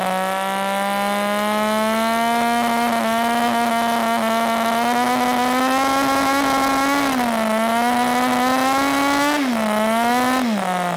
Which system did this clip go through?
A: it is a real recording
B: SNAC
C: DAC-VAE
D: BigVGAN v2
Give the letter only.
A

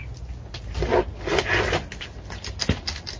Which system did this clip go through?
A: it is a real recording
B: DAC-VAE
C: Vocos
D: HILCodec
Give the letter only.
A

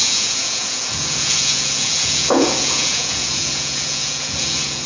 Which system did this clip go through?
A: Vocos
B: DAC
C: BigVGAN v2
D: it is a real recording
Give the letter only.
A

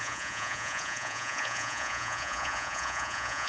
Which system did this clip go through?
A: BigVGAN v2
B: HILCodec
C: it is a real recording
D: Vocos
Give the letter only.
D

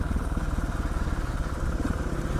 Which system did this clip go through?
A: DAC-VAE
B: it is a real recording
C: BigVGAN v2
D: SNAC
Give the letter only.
B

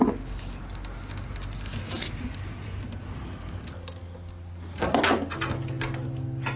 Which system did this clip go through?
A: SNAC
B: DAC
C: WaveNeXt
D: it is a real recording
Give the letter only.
D